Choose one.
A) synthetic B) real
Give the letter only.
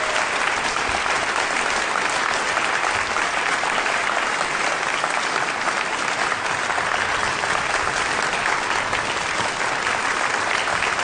B